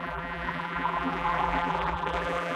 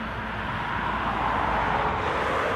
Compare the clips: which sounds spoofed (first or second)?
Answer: first